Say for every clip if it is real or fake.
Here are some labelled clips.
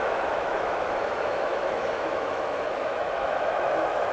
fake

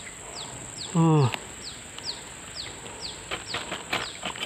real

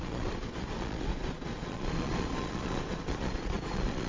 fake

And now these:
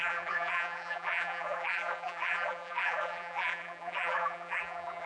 fake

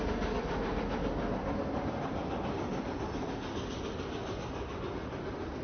real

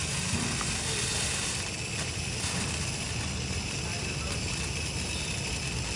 real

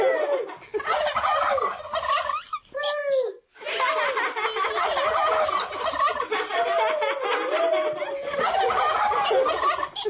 real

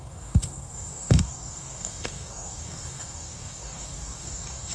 fake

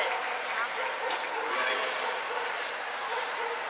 real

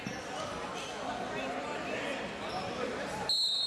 real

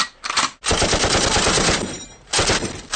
real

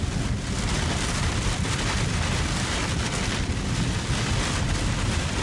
real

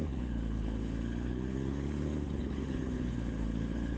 fake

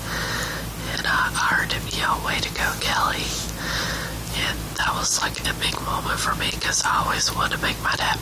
real